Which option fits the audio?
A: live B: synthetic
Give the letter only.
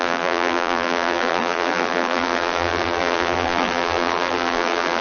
B